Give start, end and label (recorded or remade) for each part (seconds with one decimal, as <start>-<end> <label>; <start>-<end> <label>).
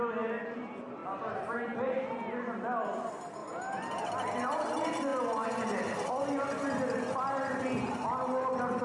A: 0.0-8.8 recorded